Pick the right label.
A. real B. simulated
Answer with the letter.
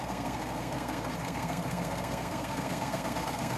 B